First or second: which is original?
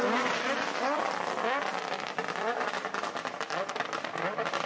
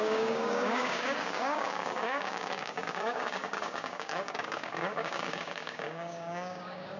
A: first